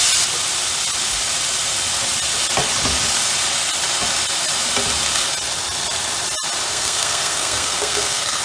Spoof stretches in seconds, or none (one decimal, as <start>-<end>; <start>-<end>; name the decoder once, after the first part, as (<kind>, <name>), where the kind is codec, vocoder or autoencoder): 6.7-8.4 (codec, SNAC)